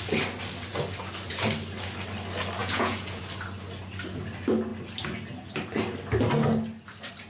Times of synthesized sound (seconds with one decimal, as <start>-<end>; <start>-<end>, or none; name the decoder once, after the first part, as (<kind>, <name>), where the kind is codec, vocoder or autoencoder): 2.6-3.2 (vocoder, Vocos)